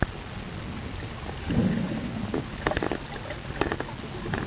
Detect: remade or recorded recorded